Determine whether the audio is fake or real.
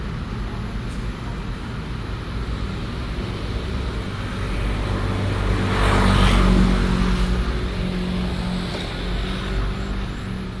real